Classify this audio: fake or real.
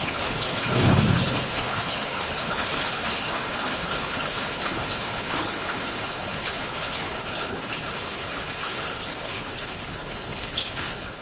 fake